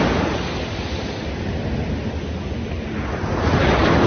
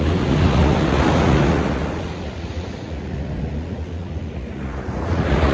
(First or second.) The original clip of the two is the first